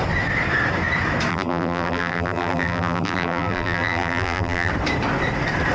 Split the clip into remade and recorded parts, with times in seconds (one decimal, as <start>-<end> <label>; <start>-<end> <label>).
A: 0.0-1.3 recorded; 1.3-4.7 remade; 4.7-5.7 recorded